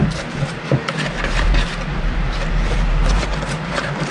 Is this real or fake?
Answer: fake